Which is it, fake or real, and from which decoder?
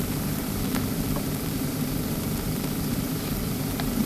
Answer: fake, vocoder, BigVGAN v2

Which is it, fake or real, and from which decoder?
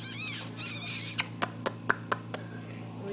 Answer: real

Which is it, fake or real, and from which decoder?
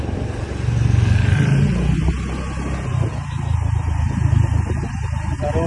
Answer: real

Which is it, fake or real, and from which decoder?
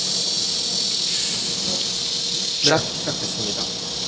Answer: real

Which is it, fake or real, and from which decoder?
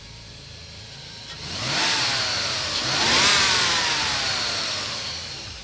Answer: fake, vocoder, BigVGAN v2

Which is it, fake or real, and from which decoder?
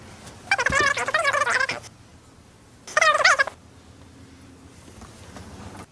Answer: real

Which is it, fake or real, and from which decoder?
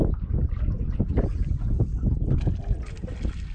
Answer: real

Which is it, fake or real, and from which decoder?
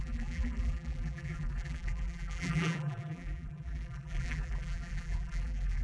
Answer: fake, vocoder, BigVGAN v2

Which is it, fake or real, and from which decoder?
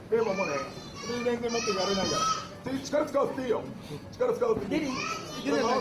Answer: real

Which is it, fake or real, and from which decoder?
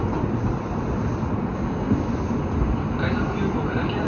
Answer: fake, vocoder, BigVGAN v2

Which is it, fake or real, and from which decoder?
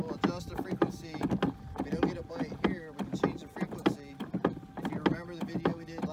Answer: real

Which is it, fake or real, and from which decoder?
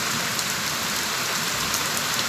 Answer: real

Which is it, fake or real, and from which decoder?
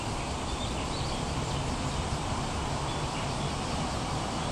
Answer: fake, vocoder, BigVGAN v2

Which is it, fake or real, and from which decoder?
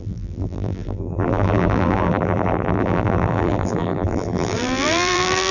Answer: fake, vocoder, BigVGAN v2